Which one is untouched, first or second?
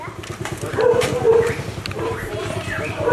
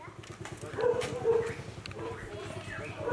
second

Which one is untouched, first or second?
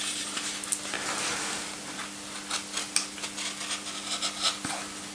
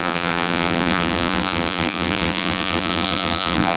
first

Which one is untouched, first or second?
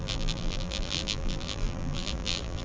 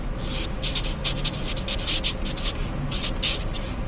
second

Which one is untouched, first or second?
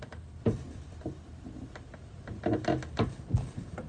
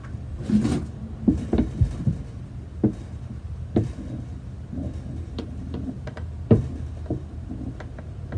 second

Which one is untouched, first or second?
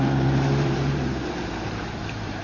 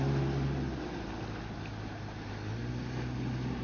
second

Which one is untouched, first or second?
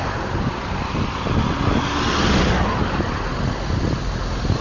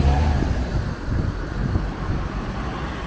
first